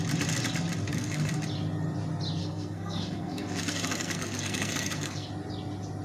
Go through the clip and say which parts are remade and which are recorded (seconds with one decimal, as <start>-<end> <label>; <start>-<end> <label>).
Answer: 0.0-0.9 recorded; 0.9-1.4 remade; 1.4-2.4 recorded; 2.4-5.3 remade; 5.3-6.0 recorded